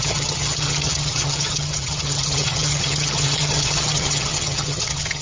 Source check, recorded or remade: remade